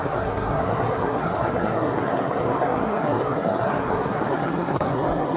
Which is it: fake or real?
fake